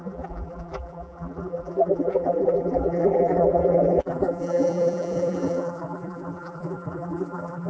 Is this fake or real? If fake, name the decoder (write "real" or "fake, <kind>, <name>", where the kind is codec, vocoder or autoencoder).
fake, vocoder, BigVGAN v2